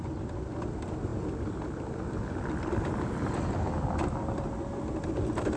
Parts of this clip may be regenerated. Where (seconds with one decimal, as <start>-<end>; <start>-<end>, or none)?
none